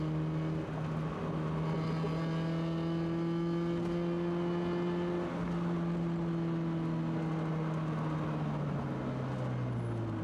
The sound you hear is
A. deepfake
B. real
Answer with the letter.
B